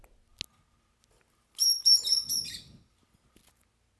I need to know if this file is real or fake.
real